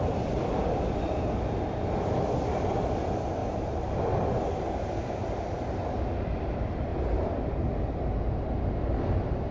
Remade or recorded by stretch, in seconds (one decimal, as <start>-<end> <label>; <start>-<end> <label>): 0.0-3.4 recorded; 3.4-4.0 remade; 4.0-5.2 recorded; 5.2-6.0 remade; 6.0-6.9 recorded; 6.9-7.6 remade; 7.6-9.5 recorded